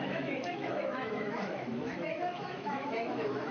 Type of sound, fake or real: fake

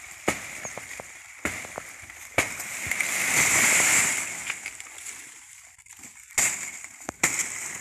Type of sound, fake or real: real